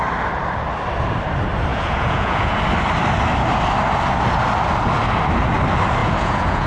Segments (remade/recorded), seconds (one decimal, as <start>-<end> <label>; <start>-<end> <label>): 0.0-1.7 recorded; 1.7-2.6 remade; 2.6-6.0 recorded; 6.0-6.7 remade